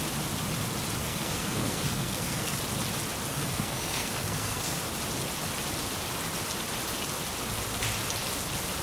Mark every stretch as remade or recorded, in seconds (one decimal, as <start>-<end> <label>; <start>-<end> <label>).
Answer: 0.0-1.0 recorded; 1.0-2.6 remade; 2.6-3.3 recorded; 3.3-4.8 remade; 4.8-8.8 recorded

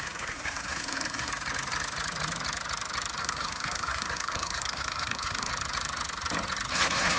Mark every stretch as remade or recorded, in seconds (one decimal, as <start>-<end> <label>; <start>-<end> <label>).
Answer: 0.0-1.3 remade; 1.3-3.2 recorded; 3.2-5.5 remade; 5.5-6.7 recorded; 6.7-7.2 remade

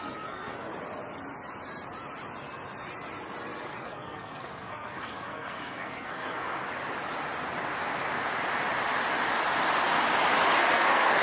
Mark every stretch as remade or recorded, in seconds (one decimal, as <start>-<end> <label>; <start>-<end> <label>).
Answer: 0.0-0.7 remade; 0.7-3.7 recorded; 3.7-6.6 remade; 6.6-10.6 recorded; 10.6-11.2 remade

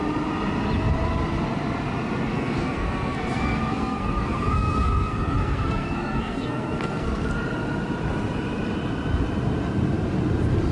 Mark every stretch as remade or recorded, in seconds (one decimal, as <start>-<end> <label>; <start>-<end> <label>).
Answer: 0.0-2.3 recorded; 2.3-7.3 remade; 7.3-10.7 recorded

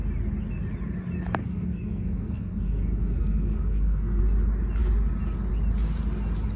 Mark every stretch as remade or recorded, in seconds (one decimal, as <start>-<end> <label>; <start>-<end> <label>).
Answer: 0.0-1.4 recorded; 1.4-4.2 remade; 4.2-6.6 recorded